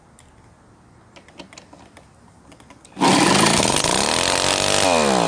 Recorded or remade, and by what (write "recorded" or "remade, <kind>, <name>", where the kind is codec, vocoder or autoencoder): recorded